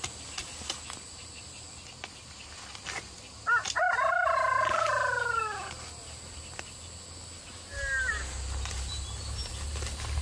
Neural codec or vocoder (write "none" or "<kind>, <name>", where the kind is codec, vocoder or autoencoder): none